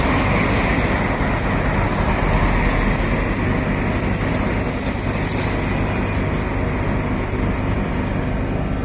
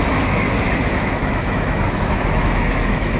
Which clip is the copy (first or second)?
second